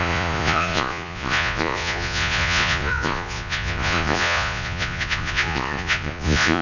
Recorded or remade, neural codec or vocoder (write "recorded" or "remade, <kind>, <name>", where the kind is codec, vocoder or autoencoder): remade, vocoder, Vocos